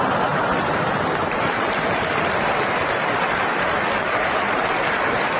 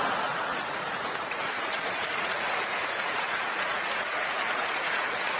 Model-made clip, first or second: second